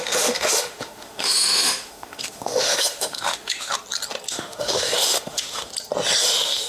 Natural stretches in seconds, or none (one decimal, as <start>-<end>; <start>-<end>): 3.7-4.3; 5.7-6.2